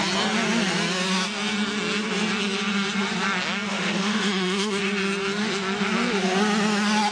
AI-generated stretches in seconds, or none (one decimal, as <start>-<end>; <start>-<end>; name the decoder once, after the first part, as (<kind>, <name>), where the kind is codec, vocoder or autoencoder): 3.7-4.8 (autoencoder, DAC-VAE)